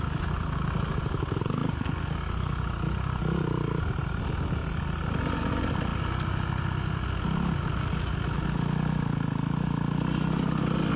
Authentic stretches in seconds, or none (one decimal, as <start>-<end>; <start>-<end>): 0.0-11.0